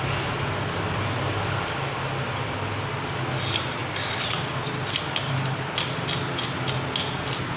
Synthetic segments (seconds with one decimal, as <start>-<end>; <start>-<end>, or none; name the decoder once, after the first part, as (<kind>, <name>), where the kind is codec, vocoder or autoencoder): none